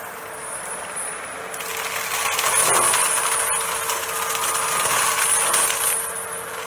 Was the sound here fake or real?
real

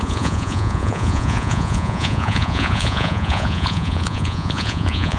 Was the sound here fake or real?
fake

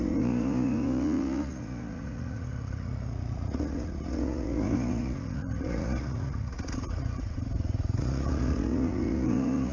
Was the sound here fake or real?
fake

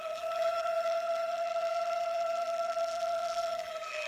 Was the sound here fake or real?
fake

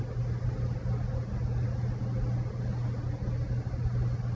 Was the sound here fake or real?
real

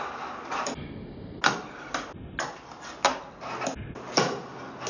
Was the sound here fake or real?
real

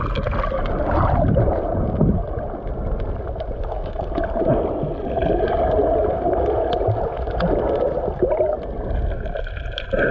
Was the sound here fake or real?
real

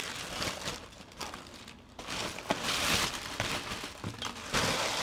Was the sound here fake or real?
real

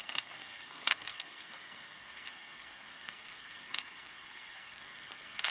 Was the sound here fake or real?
fake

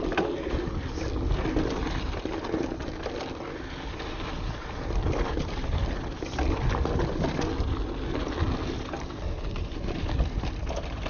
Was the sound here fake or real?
real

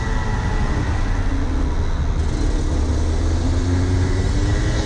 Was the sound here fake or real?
real